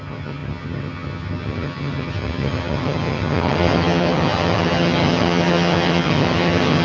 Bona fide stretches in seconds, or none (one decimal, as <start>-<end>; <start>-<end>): none